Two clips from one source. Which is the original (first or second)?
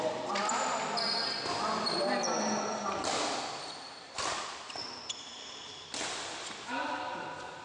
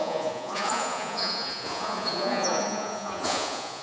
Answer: first